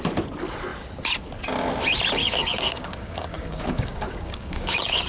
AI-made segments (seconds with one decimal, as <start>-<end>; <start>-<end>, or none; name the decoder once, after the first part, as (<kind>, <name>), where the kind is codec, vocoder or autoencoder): 2.2-5.1 (codec, DAC)

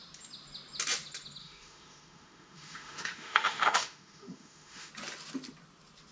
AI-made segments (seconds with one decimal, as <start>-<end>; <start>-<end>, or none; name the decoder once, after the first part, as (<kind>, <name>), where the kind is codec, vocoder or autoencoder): 1.4-4.9 (autoencoder, DAC-VAE)

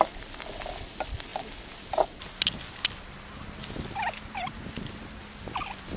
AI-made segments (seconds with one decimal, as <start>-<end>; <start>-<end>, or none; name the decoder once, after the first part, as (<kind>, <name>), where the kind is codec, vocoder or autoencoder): none

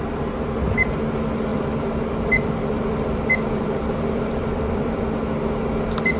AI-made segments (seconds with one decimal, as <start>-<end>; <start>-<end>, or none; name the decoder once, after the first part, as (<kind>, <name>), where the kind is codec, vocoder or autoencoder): 1.5-5.1 (vocoder, BigVGAN v2)

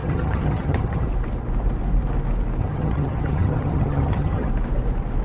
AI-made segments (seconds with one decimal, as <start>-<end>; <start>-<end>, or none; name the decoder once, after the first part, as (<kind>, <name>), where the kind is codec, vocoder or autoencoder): 0.0-1.1 (vocoder, HiFi-GAN); 2.6-4.5

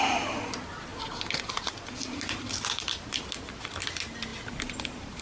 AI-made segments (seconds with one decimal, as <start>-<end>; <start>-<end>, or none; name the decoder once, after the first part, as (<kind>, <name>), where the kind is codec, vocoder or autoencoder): 0.0-5.2 (vocoder, BigVGAN v2)